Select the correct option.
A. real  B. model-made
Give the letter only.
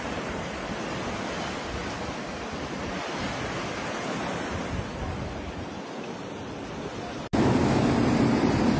A